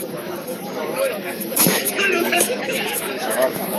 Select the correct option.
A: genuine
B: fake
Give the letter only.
B